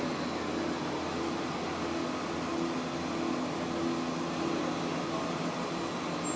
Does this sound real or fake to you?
real